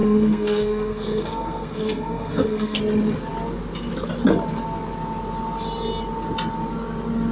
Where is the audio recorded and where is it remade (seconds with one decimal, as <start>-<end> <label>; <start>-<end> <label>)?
0.0-2.8 remade; 2.8-7.3 recorded